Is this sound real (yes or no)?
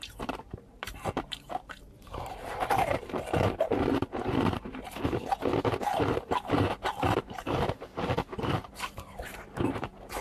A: no